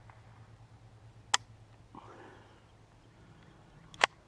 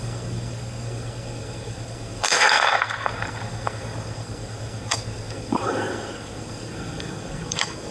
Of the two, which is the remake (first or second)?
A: second